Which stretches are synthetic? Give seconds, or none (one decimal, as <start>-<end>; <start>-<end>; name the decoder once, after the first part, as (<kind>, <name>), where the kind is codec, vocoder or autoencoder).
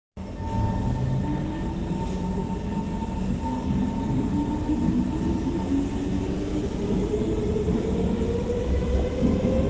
7.0-7.9 (vocoder, BigVGAN v2)